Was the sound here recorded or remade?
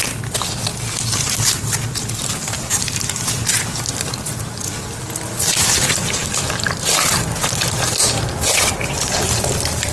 recorded